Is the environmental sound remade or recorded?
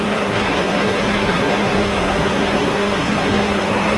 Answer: remade